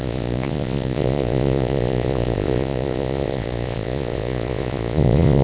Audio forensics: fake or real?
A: fake